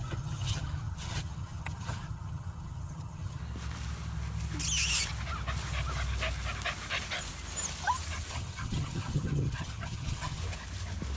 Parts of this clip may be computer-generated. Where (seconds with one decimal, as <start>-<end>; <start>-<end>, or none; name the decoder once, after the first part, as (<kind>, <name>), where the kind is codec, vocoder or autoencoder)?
0.0-3.4 (vocoder, HiFi-GAN); 8.3-10.4